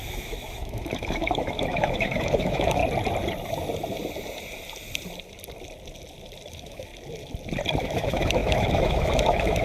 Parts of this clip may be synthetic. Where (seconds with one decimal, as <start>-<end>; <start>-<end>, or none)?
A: 0.0-2.8; 6.5-6.9; 7.8-9.6